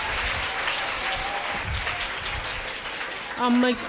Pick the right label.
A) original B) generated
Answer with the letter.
A